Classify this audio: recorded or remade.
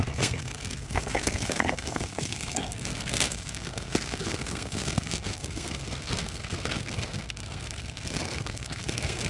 remade